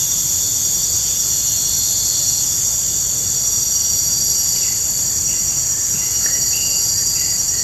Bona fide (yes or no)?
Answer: yes